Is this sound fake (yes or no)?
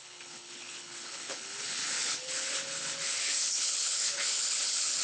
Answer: yes